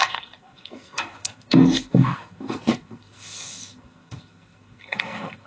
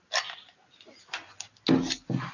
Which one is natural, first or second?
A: second